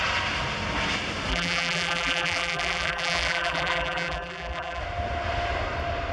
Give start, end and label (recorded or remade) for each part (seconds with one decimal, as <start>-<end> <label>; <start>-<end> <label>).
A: 0.0-1.3 recorded; 1.3-4.8 remade; 4.8-6.1 recorded

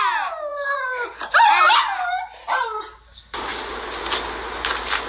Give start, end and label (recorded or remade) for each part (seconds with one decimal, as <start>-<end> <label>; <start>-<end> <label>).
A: 0.0-5.1 recorded

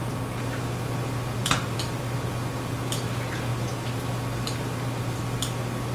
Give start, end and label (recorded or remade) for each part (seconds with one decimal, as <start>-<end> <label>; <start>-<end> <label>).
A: 0.0-1.4 recorded; 1.4-2.0 remade; 2.0-5.9 recorded

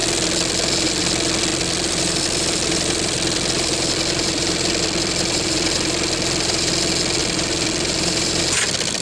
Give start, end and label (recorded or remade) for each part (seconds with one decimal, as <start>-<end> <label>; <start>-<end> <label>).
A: 0.0-1.5 recorded; 1.5-6.7 remade; 6.7-7.2 recorded; 7.2-8.4 remade; 8.4-9.0 recorded

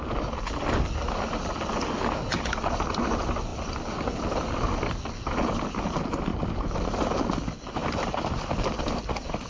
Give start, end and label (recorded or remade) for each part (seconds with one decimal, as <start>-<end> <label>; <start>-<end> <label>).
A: 0.0-6.3 recorded; 6.3-7.2 remade; 7.2-7.8 recorded; 7.8-9.5 remade

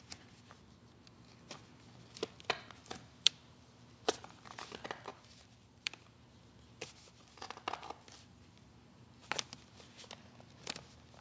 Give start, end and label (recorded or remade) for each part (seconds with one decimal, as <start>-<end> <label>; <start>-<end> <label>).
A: 0.0-2.8 recorded; 2.8-4.6 remade; 4.6-5.1 recorded; 5.1-5.9 remade; 5.9-11.2 recorded

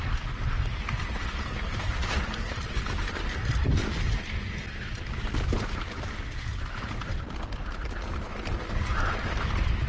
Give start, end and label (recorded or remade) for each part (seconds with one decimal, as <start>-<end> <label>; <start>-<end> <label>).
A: 0.0-2.0 recorded; 2.0-2.7 remade; 2.7-9.9 recorded

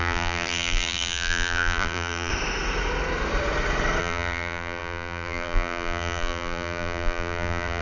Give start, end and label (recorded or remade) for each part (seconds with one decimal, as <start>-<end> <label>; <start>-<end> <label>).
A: 0.0-2.3 remade; 2.3-4.0 recorded; 4.0-7.8 remade